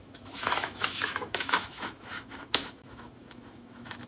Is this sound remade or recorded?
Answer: remade